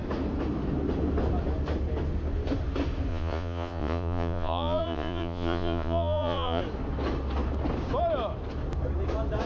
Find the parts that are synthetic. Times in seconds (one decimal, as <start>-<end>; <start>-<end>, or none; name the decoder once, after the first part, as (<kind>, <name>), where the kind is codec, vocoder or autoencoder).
3.1-6.6 (vocoder, Vocos)